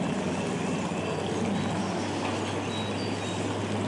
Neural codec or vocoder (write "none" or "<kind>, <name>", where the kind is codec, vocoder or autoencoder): none